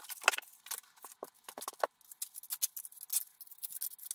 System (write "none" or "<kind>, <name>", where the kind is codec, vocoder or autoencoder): none